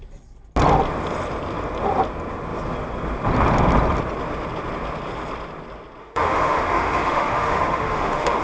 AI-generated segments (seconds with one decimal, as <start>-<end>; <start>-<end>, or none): 6.0-8.4